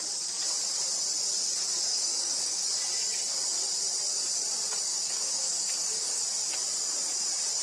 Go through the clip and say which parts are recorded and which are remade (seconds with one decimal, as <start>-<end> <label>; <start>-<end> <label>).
0.0-1.9 recorded; 1.9-2.7 remade; 2.7-4.9 recorded; 4.9-6.2 remade; 6.2-7.6 recorded